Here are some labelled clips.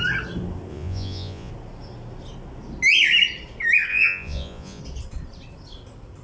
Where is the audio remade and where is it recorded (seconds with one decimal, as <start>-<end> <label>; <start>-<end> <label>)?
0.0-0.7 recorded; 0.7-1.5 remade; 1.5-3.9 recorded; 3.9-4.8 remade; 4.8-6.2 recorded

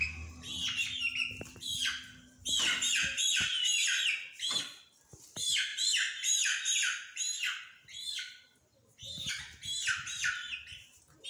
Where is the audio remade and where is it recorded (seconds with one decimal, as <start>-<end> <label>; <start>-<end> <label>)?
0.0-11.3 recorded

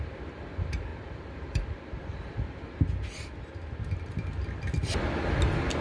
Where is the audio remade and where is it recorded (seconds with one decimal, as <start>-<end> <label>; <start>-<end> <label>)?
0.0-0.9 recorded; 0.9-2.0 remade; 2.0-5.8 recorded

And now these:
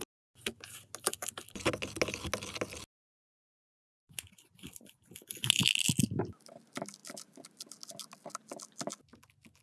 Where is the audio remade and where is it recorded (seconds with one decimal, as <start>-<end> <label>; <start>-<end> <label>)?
0.0-3.8 recorded; 3.8-4.3 remade; 4.3-9.6 recorded

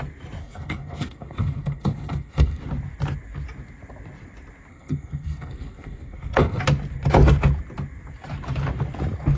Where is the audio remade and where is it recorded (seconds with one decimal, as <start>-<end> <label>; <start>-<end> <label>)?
0.0-0.4 recorded; 0.4-2.6 remade; 2.6-4.7 recorded; 4.7-6.6 remade; 6.6-9.4 recorded

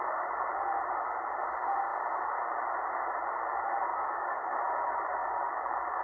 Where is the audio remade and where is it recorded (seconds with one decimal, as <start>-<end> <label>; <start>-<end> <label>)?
0.0-3.9 recorded; 3.9-4.7 remade; 4.7-6.0 recorded